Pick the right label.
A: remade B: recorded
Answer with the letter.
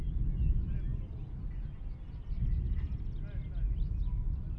B